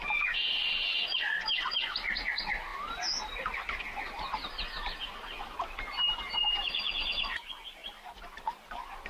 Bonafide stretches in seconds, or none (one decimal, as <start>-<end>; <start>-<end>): 0.0-9.1